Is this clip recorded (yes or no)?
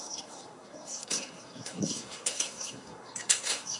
no